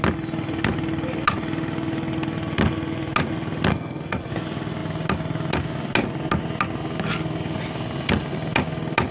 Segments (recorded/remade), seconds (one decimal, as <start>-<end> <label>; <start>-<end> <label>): 0.0-3.7 recorded; 3.7-4.3 remade; 4.3-9.1 recorded